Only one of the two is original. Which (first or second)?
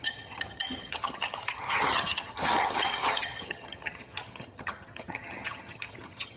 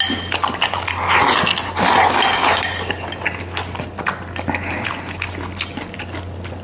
second